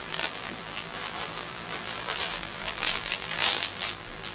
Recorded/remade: remade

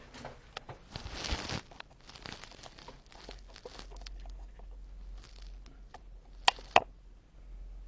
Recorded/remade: recorded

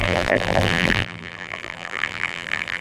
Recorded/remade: remade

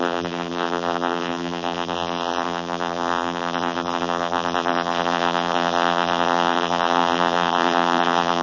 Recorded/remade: remade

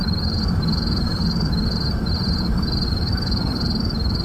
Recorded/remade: remade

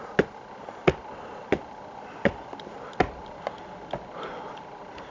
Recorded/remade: recorded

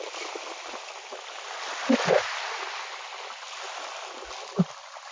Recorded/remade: recorded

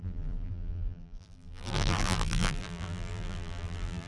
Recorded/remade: remade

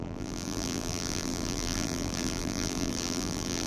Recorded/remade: remade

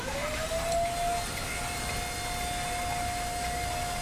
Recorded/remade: recorded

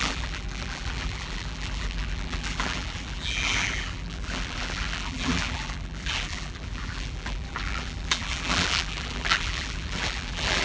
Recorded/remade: remade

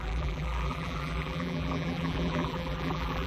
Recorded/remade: remade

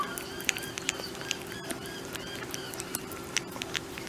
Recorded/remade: remade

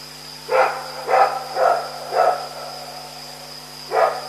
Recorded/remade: recorded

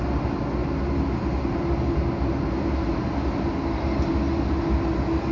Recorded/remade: recorded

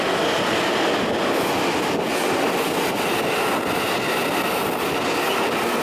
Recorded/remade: recorded